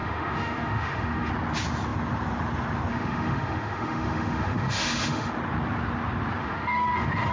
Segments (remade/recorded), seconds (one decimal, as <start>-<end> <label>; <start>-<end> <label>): 0.0-1.3 remade; 1.3-2.9 recorded; 2.9-5.3 remade; 5.3-6.4 recorded; 6.4-7.3 remade